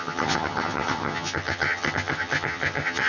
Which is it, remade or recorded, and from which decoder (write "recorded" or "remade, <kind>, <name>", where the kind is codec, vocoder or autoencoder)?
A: remade, vocoder, HiFi-GAN